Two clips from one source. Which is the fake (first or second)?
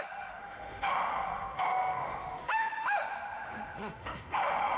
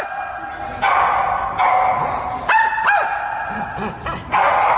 first